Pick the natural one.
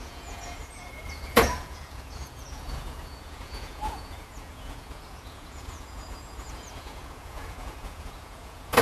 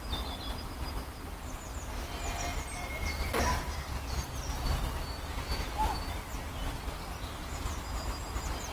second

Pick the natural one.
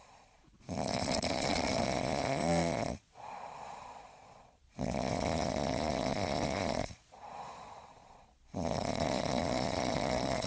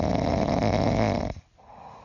second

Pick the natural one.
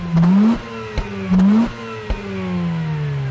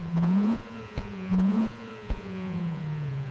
first